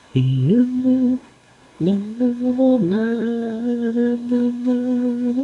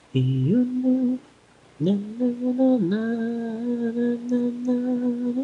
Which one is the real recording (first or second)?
second